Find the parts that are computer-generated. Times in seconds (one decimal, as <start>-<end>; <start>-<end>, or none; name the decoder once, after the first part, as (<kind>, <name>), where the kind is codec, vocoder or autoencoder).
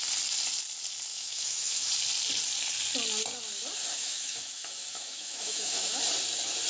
1.1-1.9 (autoencoder, DAC-VAE); 4.0-6.0